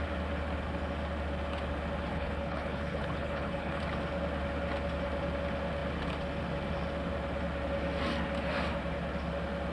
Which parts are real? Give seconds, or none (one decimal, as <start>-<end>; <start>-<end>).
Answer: 0.0-2.1; 3.8-9.7